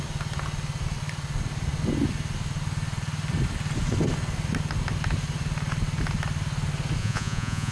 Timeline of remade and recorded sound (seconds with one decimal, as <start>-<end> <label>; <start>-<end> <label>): 0.0-7.0 recorded; 7.0-7.7 remade

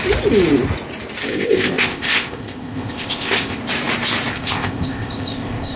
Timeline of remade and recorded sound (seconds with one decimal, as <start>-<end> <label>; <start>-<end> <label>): 0.0-1.3 recorded; 1.3-3.6 remade; 3.6-4.3 recorded; 4.3-5.8 remade